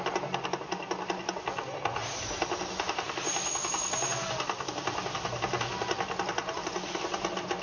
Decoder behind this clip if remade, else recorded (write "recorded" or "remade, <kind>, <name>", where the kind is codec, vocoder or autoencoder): recorded